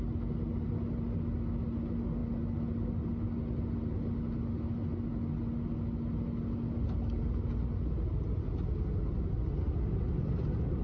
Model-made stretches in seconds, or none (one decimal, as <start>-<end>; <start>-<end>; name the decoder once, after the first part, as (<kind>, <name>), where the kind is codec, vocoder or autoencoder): none